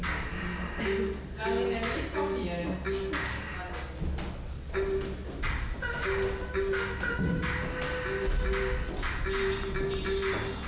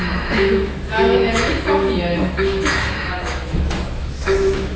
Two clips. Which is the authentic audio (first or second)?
first